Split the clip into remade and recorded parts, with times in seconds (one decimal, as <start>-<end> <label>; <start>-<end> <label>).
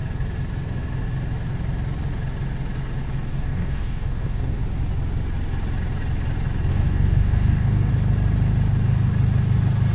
0.0-3.3 recorded; 3.3-4.6 remade; 4.6-6.7 recorded; 6.7-7.9 remade; 7.9-9.9 recorded